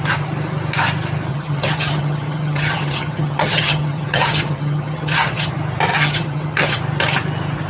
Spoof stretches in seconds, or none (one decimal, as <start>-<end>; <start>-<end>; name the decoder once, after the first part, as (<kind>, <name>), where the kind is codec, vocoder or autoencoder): 1.3-5.5 (vocoder, HiFi-GAN); 5.9-6.8